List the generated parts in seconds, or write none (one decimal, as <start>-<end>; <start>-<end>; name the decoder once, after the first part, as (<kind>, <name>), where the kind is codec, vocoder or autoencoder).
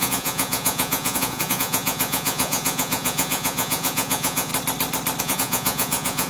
0.0-4.5 (vocoder, Vocos); 5.2-6.3